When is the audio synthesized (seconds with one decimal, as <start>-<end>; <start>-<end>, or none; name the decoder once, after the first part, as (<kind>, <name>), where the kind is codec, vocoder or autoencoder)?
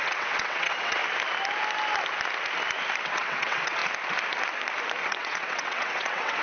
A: 0.0-1.0 (vocoder, WaveNeXt); 3.1-3.8; 5.0-6.4